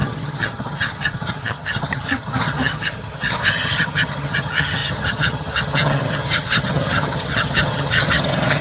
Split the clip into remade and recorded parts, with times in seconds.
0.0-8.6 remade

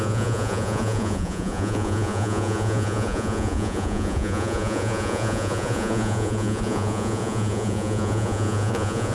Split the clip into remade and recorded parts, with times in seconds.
0.0-9.1 remade

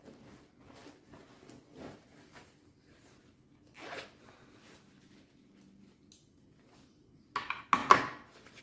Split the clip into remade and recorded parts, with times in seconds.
0.0-8.6 recorded

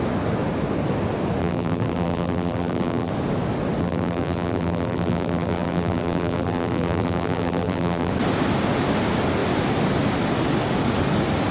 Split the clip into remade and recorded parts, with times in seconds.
0.0-1.4 recorded; 1.4-3.1 remade; 3.1-3.8 recorded; 3.8-8.1 remade; 8.1-11.5 recorded

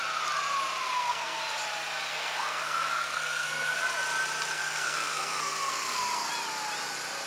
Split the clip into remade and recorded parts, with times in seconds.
0.0-0.8 recorded; 0.8-1.4 remade; 1.4-2.1 recorded; 2.1-3.8 remade; 3.8-4.5 recorded; 4.5-6.3 remade; 6.3-7.3 recorded

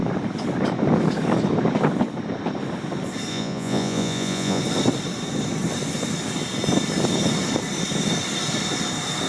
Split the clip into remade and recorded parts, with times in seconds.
0.0-3.3 recorded; 3.3-4.6 remade; 4.6-9.3 recorded